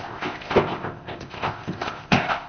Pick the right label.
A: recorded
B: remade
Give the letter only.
B